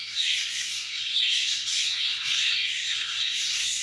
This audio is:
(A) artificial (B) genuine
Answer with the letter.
A